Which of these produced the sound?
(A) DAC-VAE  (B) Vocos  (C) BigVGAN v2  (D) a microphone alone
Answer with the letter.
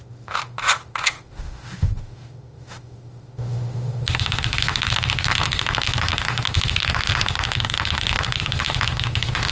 A